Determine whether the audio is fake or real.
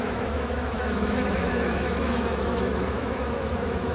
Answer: fake